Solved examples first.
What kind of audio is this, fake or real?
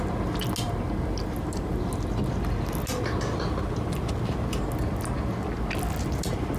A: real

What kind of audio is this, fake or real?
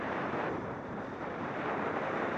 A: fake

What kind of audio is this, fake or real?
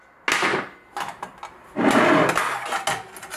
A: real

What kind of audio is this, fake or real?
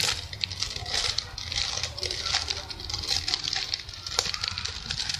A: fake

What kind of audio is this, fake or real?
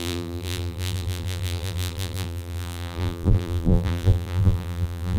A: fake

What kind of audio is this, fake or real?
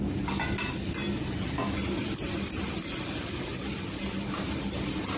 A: real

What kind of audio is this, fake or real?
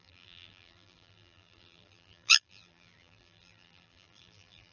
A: fake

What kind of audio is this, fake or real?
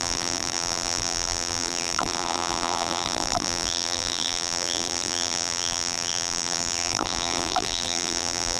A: fake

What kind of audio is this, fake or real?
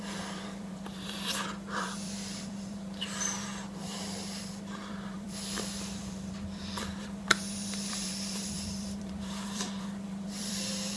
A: fake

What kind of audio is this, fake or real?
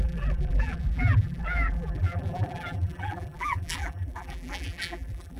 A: fake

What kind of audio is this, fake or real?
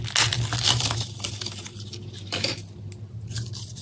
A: real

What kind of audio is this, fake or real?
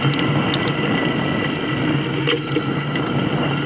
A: real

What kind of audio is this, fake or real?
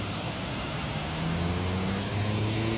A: real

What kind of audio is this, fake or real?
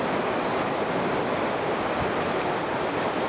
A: real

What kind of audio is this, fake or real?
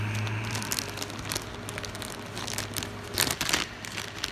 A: real